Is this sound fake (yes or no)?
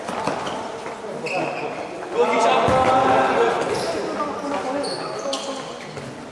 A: no